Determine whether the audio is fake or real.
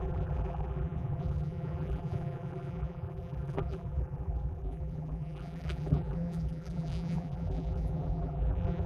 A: fake